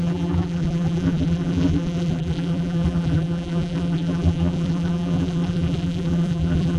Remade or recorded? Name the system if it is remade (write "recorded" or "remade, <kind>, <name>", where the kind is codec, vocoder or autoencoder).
remade, vocoder, BigVGAN v2